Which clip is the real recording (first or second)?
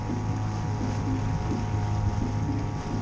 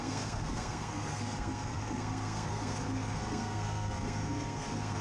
first